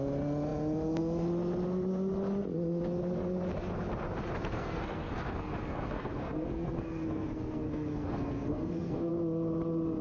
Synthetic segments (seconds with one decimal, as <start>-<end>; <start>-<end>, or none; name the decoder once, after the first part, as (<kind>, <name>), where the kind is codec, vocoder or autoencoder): 4.4-9.1 (codec, SNAC)